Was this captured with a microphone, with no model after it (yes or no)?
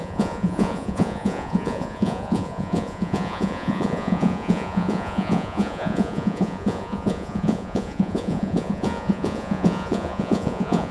no